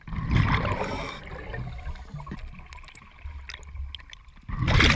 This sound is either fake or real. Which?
real